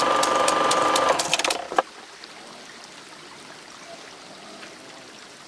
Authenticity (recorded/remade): recorded